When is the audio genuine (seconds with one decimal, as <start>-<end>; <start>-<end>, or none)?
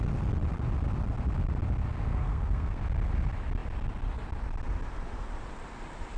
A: 0.0-2.1; 2.8-6.2